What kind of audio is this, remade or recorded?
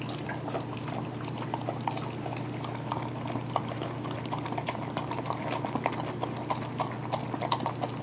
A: recorded